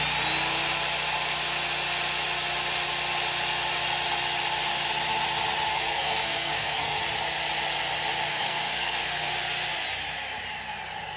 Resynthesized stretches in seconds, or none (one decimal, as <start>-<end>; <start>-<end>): 5.7-7.0; 8.3-9.3